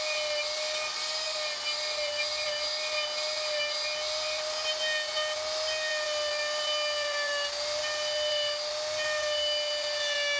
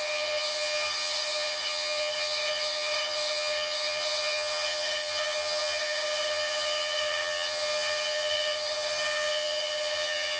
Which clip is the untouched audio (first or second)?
first